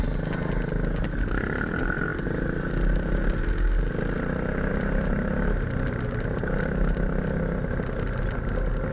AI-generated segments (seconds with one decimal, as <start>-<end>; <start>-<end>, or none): none